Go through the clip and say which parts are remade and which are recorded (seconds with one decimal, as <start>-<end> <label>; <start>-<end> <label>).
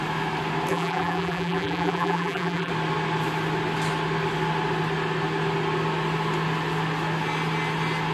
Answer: 0.0-0.7 recorded; 0.7-2.7 remade; 2.7-8.1 recorded